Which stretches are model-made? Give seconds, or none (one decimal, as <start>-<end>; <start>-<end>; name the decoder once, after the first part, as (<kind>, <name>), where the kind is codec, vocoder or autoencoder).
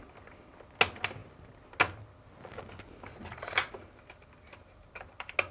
3.1-3.7 (vocoder, Vocos)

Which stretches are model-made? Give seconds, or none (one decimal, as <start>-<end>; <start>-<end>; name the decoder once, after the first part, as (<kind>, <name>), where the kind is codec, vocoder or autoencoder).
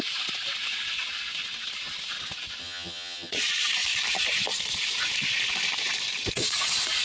2.6-3.3 (vocoder, HiFi-GAN)